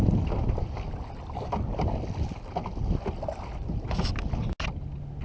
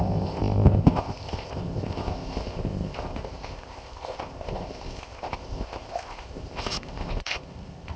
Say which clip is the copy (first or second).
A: second